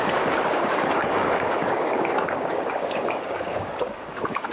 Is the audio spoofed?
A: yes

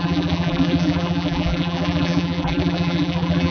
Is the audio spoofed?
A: yes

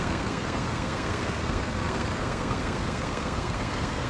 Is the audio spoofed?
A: yes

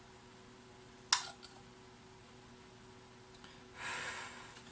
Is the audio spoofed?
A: no